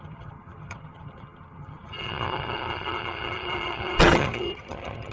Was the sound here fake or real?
fake